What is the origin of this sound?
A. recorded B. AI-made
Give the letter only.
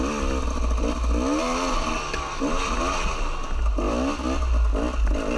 A